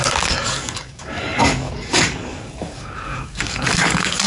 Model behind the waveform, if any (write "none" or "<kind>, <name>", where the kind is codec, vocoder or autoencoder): codec, DAC